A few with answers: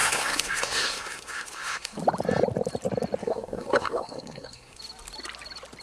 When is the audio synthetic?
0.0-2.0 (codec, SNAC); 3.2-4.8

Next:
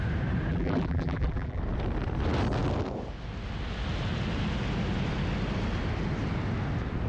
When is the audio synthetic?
0.5-1.6 (vocoder, BigVGAN v2)

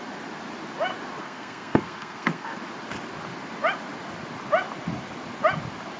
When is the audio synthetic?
1.2-2.6 (codec, SNAC)

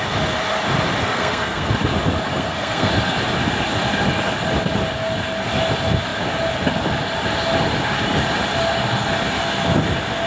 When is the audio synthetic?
1.0-1.7 (codec, SNAC); 2.3-2.9